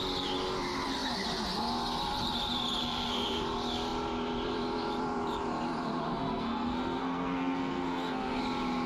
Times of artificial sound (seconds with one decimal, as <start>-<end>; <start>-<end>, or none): 2.8-3.4; 6.1-8.4